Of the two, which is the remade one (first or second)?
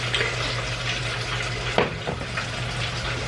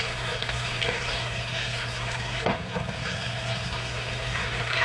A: second